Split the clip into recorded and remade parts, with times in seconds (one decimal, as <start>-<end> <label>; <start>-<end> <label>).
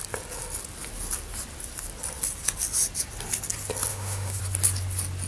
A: 0.0-3.9 recorded; 3.9-4.4 remade; 4.4-5.3 recorded